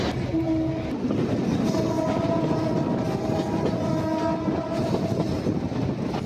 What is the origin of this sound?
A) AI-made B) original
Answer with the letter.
B